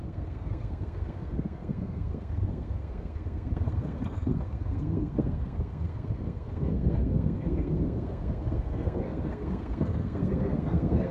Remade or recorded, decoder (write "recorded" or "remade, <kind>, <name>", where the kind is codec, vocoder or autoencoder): remade, codec, SNAC